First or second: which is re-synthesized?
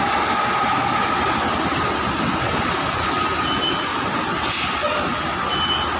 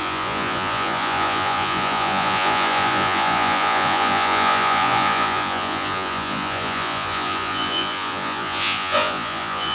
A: second